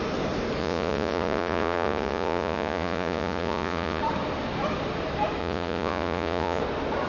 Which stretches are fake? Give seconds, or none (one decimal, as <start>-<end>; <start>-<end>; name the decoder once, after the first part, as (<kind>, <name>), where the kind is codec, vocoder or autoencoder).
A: 0.6-4.0 (vocoder, Vocos); 5.4-6.6